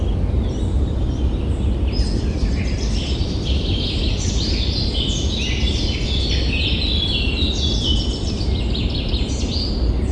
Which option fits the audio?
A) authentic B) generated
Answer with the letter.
A